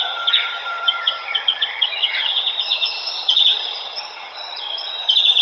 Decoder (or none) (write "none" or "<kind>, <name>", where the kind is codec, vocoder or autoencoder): vocoder, HiFi-GAN